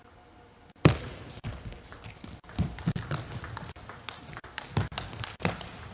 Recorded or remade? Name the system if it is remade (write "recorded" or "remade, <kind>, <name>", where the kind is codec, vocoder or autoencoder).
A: recorded